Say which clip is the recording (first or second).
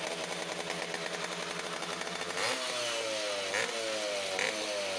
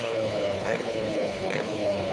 first